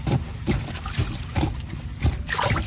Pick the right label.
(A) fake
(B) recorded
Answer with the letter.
B